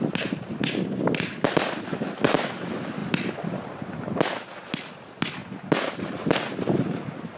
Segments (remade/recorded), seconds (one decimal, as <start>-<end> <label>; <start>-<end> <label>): 0.0-7.4 recorded